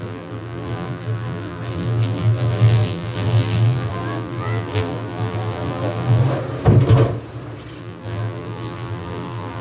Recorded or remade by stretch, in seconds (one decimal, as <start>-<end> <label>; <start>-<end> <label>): 0.0-6.2 remade; 6.2-7.8 recorded; 7.8-9.6 remade